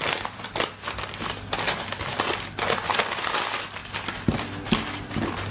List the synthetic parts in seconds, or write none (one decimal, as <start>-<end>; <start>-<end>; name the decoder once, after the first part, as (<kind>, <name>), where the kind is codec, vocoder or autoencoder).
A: none